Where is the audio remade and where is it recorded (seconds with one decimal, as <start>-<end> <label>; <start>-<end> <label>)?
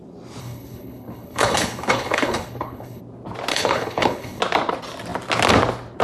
0.0-0.4 recorded; 0.4-3.0 remade; 3.0-3.5 recorded; 3.5-4.4 remade; 4.4-6.0 recorded